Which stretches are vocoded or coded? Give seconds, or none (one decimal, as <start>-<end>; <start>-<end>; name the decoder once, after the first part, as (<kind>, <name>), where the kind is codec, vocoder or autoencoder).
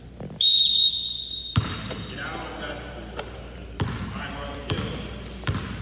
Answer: 1.4-4.6 (vocoder, BigVGAN v2)